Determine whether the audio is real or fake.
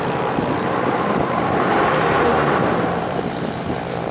fake